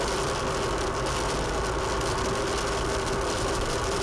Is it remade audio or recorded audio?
recorded